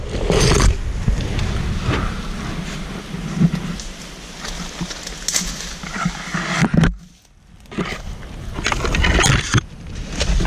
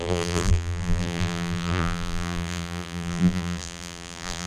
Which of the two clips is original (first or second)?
first